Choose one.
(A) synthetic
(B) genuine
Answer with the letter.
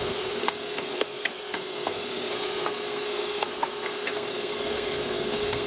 A